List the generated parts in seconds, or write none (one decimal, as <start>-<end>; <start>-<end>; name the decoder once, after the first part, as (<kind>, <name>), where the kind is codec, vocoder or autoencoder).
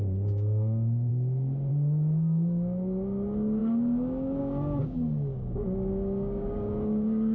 0.0-1.1 (codec, DAC); 1.7-7.3